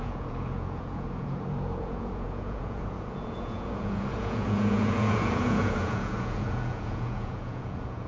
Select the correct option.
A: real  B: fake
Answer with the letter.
B